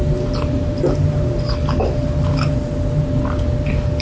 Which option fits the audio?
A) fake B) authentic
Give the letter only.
B